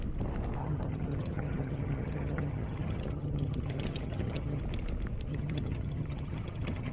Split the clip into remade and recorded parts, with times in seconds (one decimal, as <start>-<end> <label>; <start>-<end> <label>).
0.0-0.6 recorded; 0.6-4.6 remade; 4.6-5.3 recorded; 5.3-6.9 remade